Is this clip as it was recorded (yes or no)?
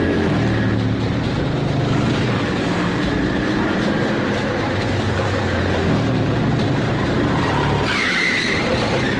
no